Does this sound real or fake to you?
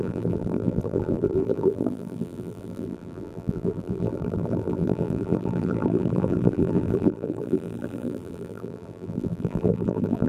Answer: fake